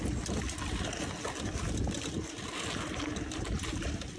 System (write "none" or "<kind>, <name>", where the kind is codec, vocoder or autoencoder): none